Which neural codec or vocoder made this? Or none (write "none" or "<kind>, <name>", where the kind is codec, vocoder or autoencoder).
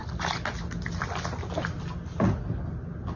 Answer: none